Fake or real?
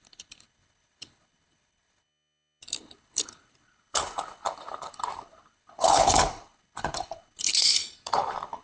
fake